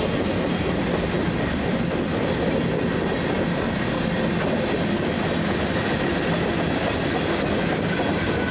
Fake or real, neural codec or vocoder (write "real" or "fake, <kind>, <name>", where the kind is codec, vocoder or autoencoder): real